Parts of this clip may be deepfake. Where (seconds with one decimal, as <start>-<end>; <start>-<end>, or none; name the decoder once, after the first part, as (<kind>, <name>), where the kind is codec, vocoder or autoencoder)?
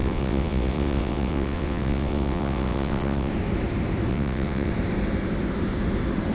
0.0-3.3 (vocoder, WaveNeXt); 4.1-4.7